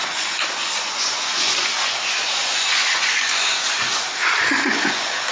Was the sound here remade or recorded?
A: remade